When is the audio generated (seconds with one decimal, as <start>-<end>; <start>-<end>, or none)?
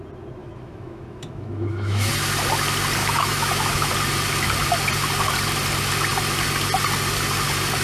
0.4-2.1; 3.0-3.9